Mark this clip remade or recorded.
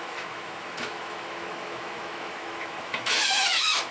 remade